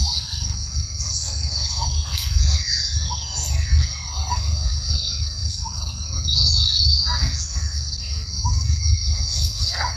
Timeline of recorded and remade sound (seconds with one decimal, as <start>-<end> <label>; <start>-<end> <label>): 0.0-10.0 remade